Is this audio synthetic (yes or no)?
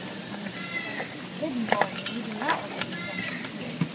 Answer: no